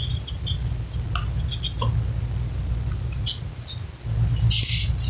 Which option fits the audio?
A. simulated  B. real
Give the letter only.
B